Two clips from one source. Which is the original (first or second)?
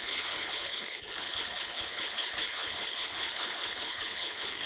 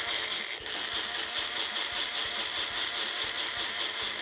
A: second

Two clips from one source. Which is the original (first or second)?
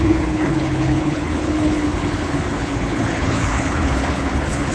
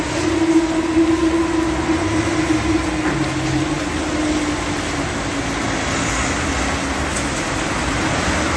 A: second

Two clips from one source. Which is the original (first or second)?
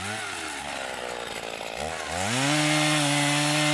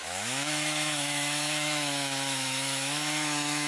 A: first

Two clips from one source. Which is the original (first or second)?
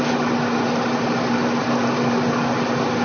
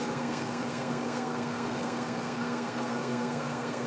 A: first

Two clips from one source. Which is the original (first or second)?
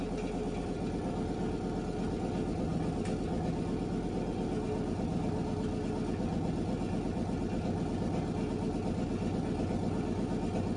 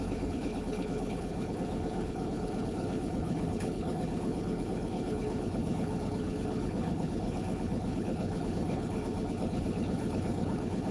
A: first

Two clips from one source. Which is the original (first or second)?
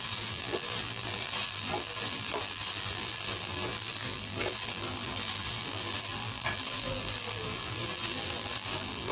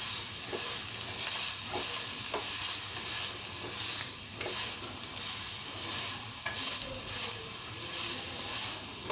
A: second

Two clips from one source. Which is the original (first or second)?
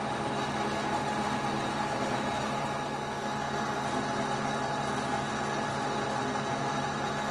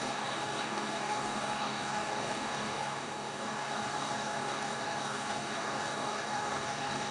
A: first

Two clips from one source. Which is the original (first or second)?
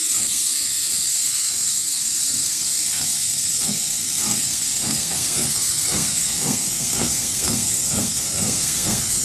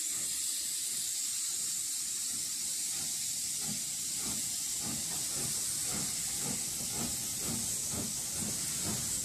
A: second